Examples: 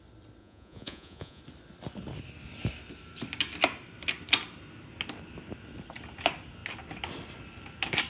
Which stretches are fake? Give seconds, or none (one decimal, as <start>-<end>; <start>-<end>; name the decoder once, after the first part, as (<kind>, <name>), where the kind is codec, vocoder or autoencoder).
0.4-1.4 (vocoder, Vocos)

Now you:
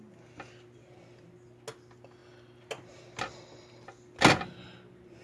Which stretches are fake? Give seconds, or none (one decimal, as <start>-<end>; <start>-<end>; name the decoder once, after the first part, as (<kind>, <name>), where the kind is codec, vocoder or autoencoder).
none

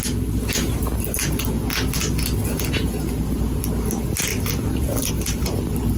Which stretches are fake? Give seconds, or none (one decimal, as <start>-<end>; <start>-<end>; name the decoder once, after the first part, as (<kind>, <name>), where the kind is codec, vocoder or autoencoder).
4.3-5.1 (vocoder, BigVGAN v2)

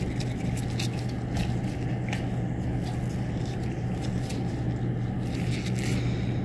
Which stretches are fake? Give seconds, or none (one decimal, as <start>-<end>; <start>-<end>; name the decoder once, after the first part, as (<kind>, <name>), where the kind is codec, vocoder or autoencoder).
none

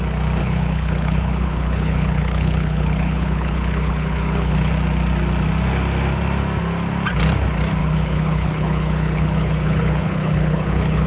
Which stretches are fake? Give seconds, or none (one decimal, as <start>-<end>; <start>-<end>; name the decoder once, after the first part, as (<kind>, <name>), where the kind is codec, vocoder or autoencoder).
0.4-4.7 (codec, HILCodec); 7.8-11.1

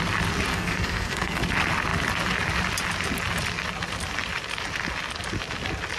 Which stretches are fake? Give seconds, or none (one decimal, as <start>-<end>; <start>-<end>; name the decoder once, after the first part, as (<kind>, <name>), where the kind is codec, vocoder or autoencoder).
0.5-1.4 (codec, SNAC)